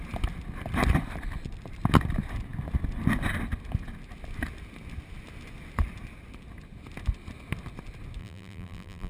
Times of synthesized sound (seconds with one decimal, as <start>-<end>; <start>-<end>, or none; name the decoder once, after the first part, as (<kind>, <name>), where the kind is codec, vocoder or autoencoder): 8.2-9.1 (vocoder, BigVGAN v2)